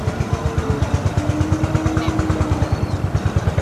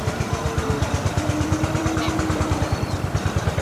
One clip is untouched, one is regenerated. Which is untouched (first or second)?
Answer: first